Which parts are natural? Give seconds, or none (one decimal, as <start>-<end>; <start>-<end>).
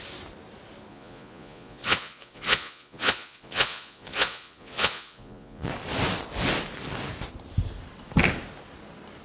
0.0-0.9; 5.7-9.2